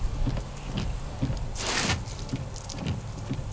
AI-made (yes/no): no